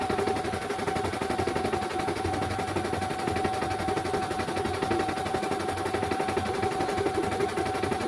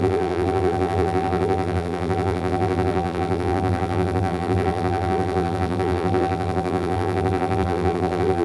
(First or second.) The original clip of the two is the first